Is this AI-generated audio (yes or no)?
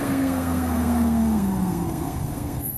yes